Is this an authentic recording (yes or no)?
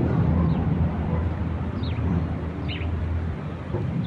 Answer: no